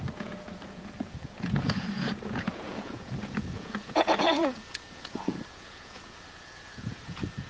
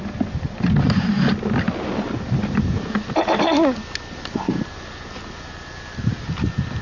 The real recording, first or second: second